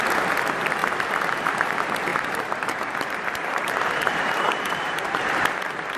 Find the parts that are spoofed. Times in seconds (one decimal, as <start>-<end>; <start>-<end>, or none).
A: 2.1-5.3